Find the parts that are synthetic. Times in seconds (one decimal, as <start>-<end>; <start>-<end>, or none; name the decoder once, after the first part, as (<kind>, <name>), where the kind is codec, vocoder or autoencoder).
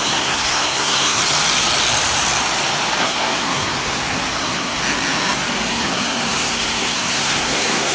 0.0-1.2 (codec, SNAC); 3.0-4.8; 5.7-7.9